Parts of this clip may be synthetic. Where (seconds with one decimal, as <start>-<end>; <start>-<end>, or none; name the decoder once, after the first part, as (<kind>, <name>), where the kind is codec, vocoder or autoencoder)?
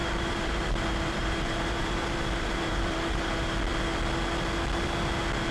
0.0-3.3 (vocoder, BigVGAN v2)